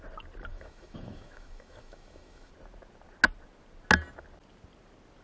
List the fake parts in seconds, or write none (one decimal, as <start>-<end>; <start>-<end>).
0.5-2.5